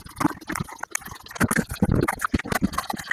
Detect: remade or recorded recorded